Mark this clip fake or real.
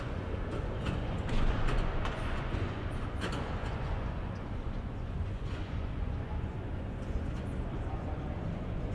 fake